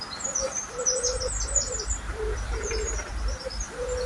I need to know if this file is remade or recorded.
remade